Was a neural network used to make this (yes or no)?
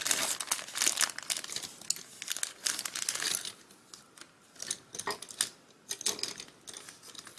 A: no